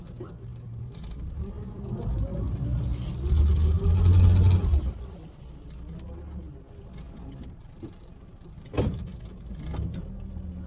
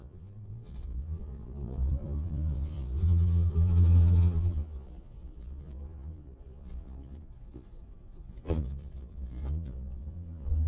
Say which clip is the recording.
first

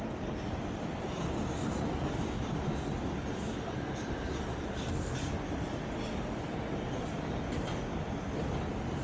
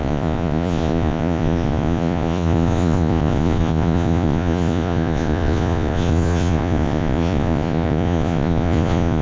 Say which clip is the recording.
first